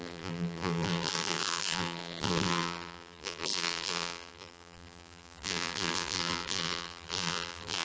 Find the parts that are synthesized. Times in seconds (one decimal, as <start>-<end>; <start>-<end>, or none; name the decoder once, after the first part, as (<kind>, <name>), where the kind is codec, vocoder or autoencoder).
0.0-7.8 (vocoder, BigVGAN v2)